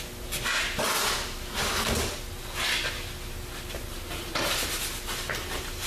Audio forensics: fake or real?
real